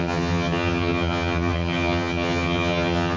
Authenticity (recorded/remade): remade